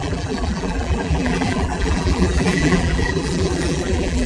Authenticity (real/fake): fake